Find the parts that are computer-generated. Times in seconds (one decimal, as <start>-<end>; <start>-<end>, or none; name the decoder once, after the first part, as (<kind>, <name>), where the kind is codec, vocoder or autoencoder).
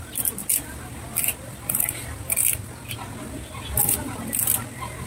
0.0-2.4 (vocoder, BigVGAN v2); 3.2-5.1